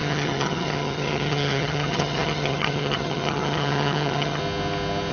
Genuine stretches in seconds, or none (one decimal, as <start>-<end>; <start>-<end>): 4.4-5.1